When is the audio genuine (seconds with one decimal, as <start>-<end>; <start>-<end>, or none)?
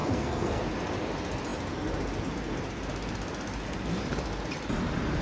0.6-5.2